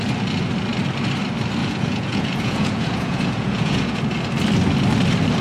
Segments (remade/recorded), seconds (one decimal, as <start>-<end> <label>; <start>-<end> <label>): 0.0-1.6 recorded; 1.6-4.0 remade; 4.0-5.4 recorded